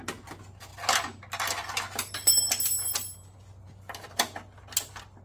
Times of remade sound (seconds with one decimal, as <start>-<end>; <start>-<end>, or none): none